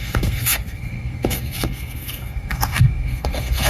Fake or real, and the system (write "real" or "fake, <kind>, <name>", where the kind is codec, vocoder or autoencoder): fake, codec, SNAC